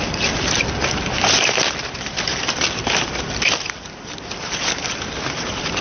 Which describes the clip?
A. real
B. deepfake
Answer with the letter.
A